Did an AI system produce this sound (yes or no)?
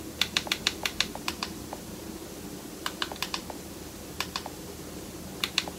no